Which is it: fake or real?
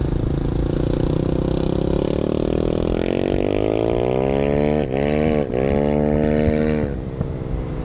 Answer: real